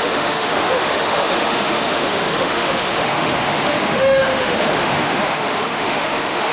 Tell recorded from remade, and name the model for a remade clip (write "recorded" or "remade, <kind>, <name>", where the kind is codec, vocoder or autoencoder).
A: remade, autoencoder, DAC-VAE